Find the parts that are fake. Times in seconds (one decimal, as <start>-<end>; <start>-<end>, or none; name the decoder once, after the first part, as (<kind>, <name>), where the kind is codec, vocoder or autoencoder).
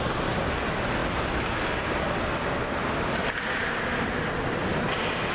none